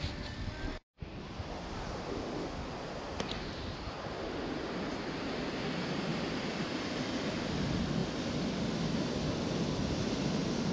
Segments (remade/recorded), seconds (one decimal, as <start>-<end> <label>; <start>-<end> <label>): 0.0-6.1 recorded; 6.1-6.9 remade; 6.9-10.7 recorded